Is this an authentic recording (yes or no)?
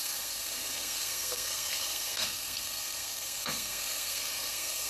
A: no